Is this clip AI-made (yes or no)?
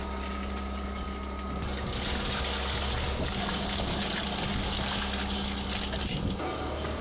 no